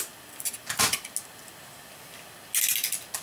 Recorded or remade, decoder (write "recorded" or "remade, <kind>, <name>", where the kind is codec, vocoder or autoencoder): recorded